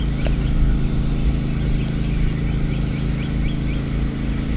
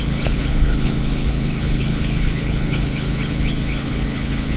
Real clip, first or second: first